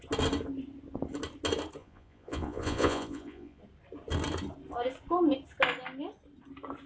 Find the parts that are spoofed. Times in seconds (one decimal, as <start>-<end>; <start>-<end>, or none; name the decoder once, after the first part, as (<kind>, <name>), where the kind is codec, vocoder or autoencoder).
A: 1.8-3.6 (vocoder, Vocos)